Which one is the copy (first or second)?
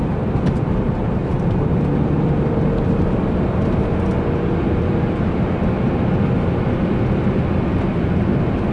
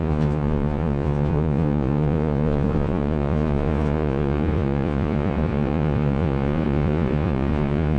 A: second